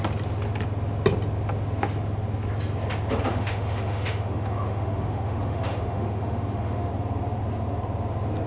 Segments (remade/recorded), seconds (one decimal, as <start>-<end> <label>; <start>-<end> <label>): 0.0-3.3 recorded; 3.3-6.9 remade; 6.9-8.5 recorded